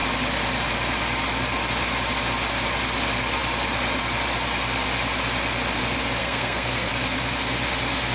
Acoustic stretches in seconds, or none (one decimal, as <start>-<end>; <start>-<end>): 0.0-6.2; 6.9-8.1